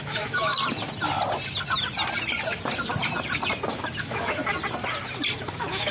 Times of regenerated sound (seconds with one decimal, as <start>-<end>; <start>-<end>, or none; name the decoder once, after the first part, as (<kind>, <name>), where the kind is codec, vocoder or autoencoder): 0.0-0.5 (autoencoder, DAC-VAE); 4.0-4.4; 5.5-5.9